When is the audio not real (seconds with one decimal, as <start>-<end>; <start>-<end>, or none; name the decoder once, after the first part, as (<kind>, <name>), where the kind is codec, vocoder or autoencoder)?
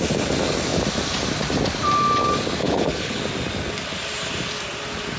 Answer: 2.6-3.2 (codec, HILCodec)